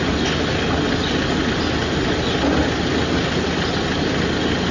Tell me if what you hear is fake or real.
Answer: real